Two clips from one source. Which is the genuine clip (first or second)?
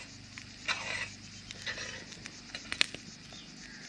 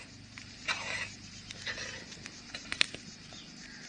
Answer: first